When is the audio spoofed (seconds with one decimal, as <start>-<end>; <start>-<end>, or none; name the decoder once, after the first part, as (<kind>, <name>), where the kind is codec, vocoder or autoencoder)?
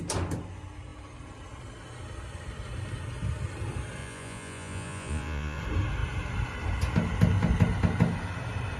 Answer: 4.0-5.6 (vocoder, Vocos)